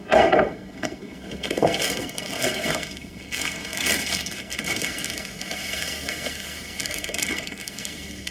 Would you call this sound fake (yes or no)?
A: yes